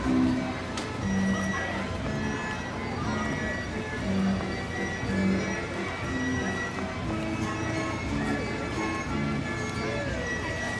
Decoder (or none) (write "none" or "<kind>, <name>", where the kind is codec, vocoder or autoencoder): none